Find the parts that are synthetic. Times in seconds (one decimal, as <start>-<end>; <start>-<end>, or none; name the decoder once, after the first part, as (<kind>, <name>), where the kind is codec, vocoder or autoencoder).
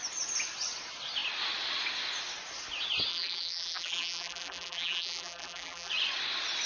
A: 3.1-5.9 (vocoder, BigVGAN v2)